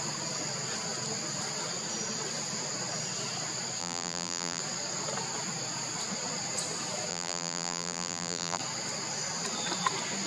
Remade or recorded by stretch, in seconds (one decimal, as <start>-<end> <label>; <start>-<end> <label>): 0.0-3.8 recorded; 3.8-4.6 remade; 4.6-7.1 recorded; 7.1-8.6 remade; 8.6-10.3 recorded